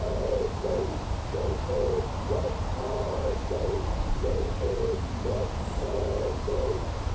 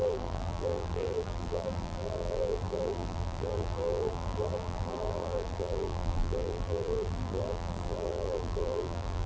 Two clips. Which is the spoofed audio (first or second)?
second